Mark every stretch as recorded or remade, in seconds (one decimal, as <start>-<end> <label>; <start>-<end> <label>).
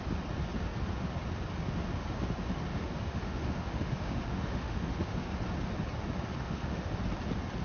0.0-2.7 recorded; 2.7-5.3 remade; 5.3-6.4 recorded; 6.4-7.0 remade; 7.0-7.6 recorded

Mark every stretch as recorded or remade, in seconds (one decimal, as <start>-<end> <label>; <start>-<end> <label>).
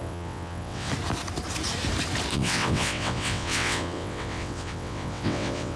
0.0-0.9 remade; 0.9-2.3 recorded; 2.3-5.8 remade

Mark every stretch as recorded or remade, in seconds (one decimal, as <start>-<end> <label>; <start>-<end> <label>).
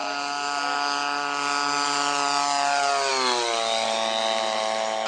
0.0-5.1 recorded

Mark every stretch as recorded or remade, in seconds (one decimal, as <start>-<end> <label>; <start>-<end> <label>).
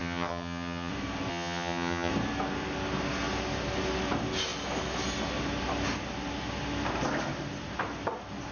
0.0-0.9 remade; 0.9-1.3 recorded; 1.3-2.1 remade; 2.1-8.5 recorded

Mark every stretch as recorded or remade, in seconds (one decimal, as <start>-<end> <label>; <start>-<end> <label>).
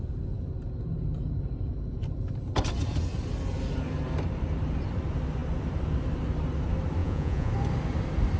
0.0-7.0 recorded; 7.0-7.5 remade; 7.5-8.4 recorded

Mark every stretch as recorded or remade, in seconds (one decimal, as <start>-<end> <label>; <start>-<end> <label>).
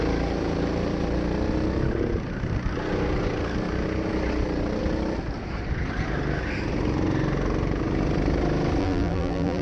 0.0-8.8 recorded; 8.8-9.6 remade